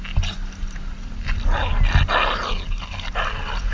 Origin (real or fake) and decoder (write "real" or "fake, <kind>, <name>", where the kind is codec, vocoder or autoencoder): real